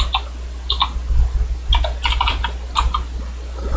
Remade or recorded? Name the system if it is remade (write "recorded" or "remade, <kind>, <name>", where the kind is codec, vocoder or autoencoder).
recorded